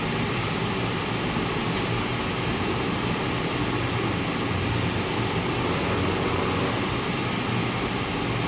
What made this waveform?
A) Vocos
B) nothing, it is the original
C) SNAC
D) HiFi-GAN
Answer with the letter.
B